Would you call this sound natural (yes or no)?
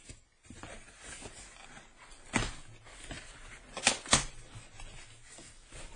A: yes